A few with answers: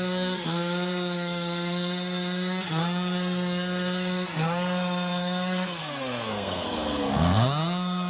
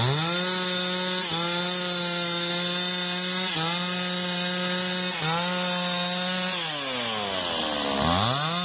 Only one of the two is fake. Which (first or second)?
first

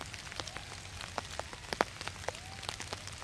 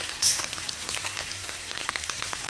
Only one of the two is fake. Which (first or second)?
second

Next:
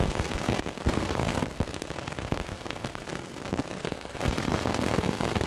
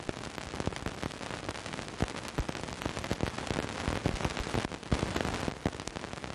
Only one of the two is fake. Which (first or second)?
first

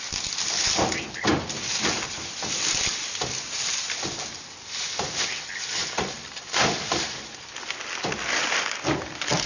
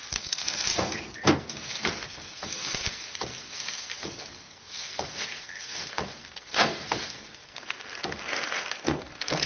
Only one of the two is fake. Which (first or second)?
second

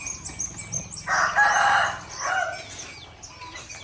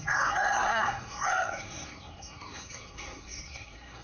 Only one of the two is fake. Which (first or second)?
second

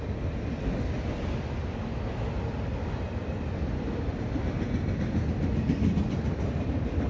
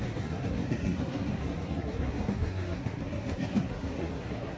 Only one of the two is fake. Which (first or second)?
second